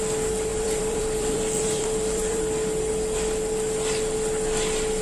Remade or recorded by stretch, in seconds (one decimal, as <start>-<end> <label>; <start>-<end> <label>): 0.0-0.5 recorded; 0.5-2.4 remade; 2.4-5.0 recorded